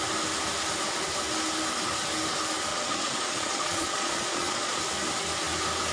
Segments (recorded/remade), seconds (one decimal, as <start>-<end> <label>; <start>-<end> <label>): 0.0-2.7 recorded; 2.7-4.8 remade; 4.8-5.9 recorded